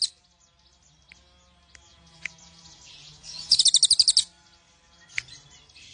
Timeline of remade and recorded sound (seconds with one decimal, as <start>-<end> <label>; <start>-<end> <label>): 0.0-1.9 recorded; 1.9-3.6 remade; 3.6-5.9 recorded